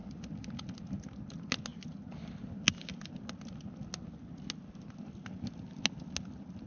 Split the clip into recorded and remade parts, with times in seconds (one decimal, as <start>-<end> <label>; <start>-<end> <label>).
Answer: 0.0-6.7 recorded